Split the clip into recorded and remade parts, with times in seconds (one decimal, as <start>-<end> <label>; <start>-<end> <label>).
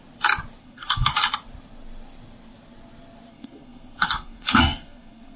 0.0-0.6 recorded; 0.6-1.1 remade; 1.1-3.3 recorded; 3.3-5.4 remade